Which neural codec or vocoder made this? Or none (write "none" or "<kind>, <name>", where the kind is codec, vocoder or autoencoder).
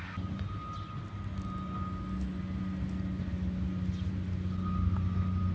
none